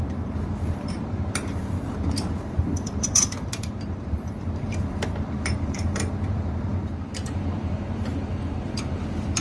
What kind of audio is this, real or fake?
fake